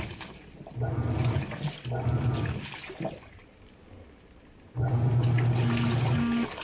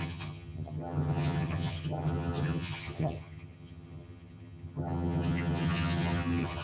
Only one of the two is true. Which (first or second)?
first